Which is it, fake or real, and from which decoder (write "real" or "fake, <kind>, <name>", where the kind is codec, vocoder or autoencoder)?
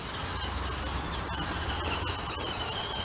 real